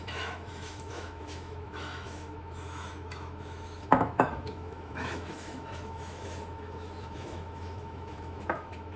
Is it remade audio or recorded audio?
remade